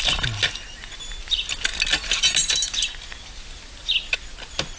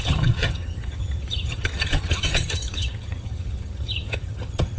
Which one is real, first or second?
first